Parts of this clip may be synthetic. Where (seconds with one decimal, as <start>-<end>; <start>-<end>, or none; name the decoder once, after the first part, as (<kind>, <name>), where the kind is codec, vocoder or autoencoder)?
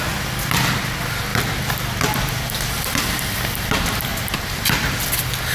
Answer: 0.0-0.8 (vocoder, BigVGAN v2); 1.3-2.9; 4.1-5.1